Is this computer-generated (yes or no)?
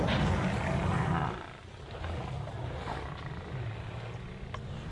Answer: no